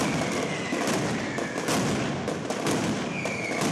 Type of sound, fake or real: real